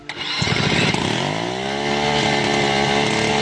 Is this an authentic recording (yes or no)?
yes